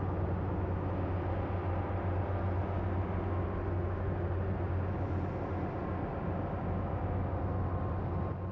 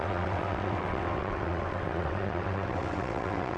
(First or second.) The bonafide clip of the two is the first